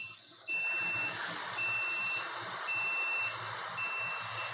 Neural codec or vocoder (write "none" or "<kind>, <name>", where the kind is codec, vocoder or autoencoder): none